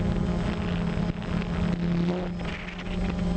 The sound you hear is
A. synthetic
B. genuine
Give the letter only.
B